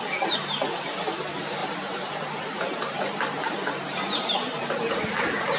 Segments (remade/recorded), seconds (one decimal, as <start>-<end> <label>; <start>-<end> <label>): 0.0-1.6 recorded; 1.6-5.0 remade; 5.0-5.6 recorded